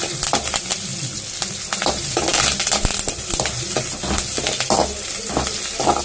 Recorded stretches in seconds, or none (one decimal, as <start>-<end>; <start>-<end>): 0.0-6.0

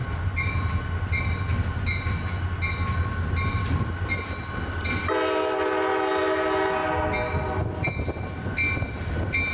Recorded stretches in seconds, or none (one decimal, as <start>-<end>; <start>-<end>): 0.0-9.5

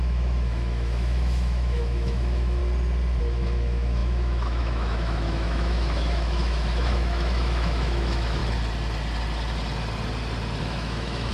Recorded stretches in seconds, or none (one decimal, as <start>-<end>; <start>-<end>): 2.6-3.2; 8.4-10.6

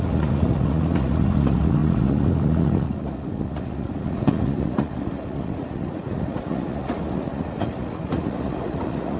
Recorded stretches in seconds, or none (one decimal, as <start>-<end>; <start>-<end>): none

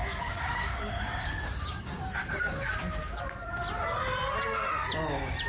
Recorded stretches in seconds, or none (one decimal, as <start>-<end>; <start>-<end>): 3.2-5.5

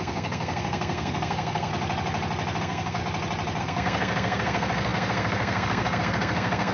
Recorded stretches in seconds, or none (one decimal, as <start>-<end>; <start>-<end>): 1.7-2.6; 3.0-3.6

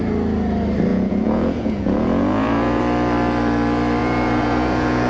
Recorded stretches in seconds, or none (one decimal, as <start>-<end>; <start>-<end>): 0.0-0.9; 2.8-4.0